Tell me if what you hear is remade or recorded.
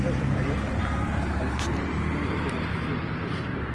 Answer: remade